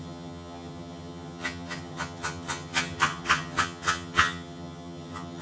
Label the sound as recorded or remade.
remade